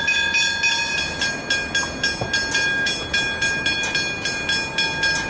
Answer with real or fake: real